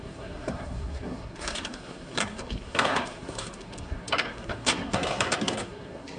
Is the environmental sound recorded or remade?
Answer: remade